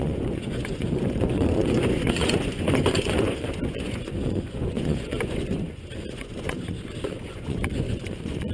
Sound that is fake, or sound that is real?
fake